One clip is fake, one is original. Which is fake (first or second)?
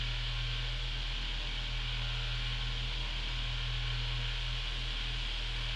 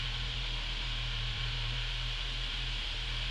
second